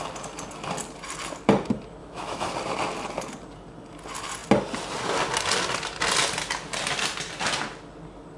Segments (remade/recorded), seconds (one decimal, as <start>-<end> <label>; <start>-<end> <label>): 0.0-2.0 recorded; 2.0-2.5 remade; 2.5-8.4 recorded